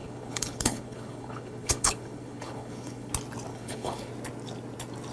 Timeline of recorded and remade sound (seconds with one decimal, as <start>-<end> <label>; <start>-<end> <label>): 0.0-3.1 remade; 3.1-3.5 recorded; 3.5-4.1 remade; 4.1-5.1 recorded